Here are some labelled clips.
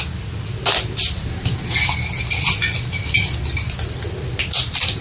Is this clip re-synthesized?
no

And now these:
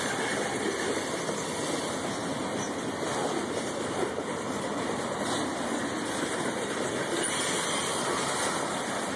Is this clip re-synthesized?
no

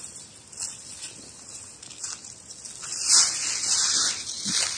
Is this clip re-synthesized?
no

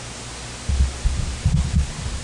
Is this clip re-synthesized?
no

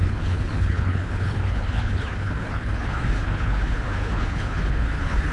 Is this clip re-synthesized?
yes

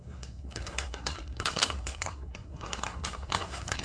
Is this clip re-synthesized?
yes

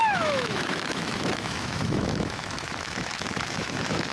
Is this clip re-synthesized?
yes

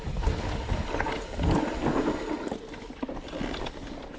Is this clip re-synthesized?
no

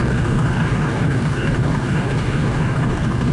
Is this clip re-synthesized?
yes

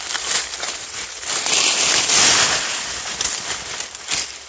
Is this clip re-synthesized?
no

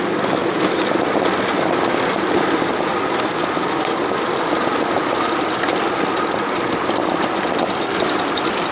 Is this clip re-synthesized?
no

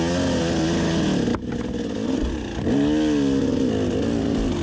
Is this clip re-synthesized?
no